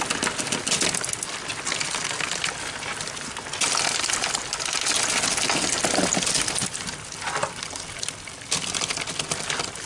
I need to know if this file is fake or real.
real